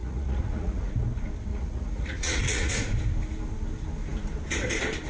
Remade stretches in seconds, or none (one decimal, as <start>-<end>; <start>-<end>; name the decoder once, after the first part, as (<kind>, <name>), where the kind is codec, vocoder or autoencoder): 0.0-0.9 (vocoder, Vocos); 1.5-2.7